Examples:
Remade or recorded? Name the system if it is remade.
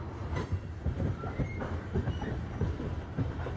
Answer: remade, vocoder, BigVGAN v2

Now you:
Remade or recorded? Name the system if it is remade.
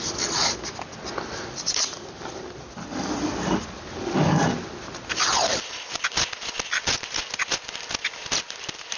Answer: recorded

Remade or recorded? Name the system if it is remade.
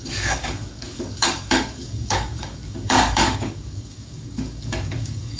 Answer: remade, codec, DAC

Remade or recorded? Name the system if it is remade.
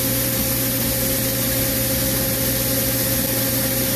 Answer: recorded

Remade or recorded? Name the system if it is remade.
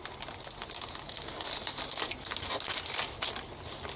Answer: recorded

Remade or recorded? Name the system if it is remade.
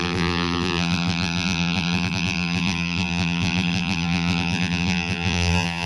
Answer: remade, vocoder, BigVGAN v2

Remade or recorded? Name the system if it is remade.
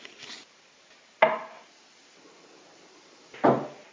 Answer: recorded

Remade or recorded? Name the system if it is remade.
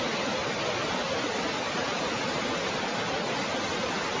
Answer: recorded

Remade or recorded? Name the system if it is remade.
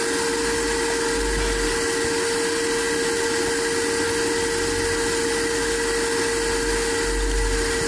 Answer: recorded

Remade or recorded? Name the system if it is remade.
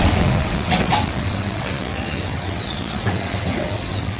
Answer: remade, vocoder, WaveNeXt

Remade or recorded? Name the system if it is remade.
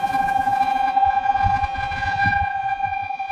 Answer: remade, vocoder, Vocos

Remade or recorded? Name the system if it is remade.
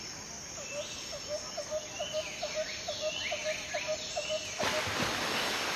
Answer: recorded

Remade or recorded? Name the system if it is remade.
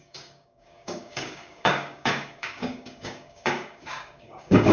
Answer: remade, codec, DAC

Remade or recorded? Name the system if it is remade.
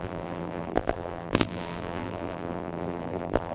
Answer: remade, vocoder, BigVGAN v2